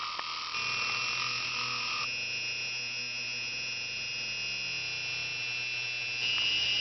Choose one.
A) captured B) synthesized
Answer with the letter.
A